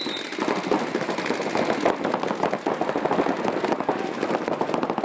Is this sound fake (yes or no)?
no